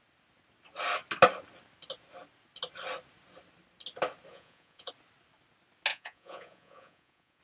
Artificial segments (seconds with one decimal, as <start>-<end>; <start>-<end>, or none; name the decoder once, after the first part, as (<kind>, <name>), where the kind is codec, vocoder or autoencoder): 4.3-4.9 (vocoder, Vocos); 5.9-7.4